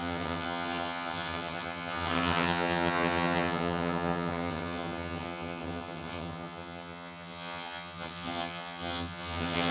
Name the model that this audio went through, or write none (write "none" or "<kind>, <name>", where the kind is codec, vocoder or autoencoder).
vocoder, HiFi-GAN